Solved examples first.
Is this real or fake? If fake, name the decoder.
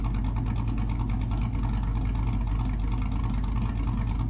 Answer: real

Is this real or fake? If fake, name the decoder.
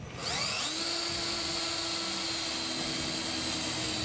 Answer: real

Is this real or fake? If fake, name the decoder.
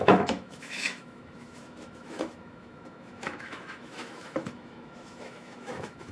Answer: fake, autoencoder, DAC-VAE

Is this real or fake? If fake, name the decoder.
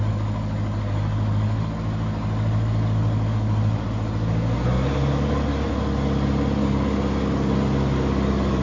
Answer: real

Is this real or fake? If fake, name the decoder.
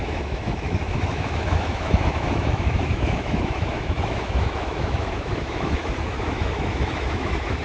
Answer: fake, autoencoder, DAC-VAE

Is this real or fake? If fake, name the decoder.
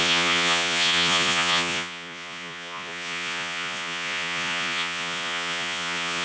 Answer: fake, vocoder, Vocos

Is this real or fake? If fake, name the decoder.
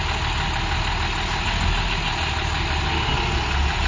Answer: real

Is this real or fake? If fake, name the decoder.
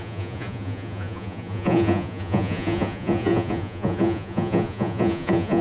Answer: fake, vocoder, Vocos